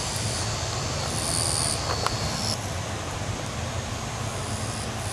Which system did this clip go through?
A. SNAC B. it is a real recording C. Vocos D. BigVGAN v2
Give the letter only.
B